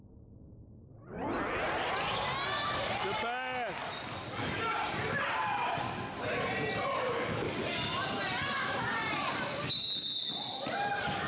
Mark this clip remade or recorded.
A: recorded